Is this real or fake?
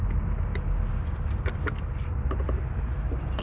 real